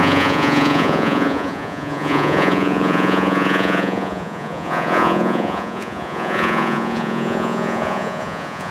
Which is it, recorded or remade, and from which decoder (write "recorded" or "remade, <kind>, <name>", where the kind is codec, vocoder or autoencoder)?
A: remade, vocoder, Vocos